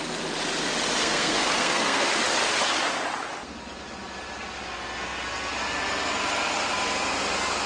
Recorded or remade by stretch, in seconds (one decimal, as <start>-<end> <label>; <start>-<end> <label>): 0.0-1.0 recorded; 1.0-2.1 remade; 2.1-7.7 recorded